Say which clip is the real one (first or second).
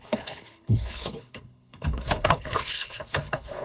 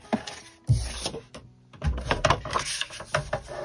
second